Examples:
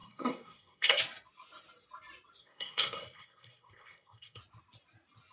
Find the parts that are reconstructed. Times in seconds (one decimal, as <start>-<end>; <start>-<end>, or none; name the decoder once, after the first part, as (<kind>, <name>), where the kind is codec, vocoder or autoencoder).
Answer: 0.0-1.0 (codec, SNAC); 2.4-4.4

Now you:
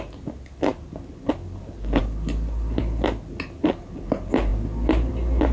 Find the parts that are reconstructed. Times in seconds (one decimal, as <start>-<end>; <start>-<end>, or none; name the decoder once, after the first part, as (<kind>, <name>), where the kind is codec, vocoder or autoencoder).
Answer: none

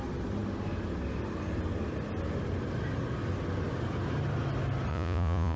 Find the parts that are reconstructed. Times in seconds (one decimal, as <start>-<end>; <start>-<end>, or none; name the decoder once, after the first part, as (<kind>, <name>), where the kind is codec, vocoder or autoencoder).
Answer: 4.9-5.6 (vocoder, Vocos)

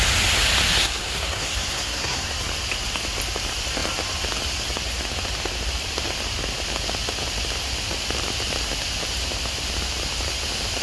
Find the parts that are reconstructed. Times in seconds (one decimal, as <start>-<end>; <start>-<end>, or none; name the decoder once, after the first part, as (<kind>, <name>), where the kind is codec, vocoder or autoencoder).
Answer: 0.8-2.3 (codec, SNAC)

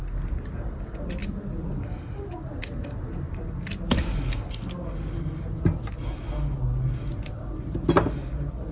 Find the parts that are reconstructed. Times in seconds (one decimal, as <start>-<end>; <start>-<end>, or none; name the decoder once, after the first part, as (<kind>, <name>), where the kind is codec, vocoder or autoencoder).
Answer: none